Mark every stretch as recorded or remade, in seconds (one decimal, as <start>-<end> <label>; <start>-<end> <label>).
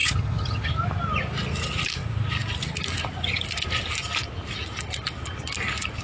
0.0-0.7 remade; 0.7-6.0 recorded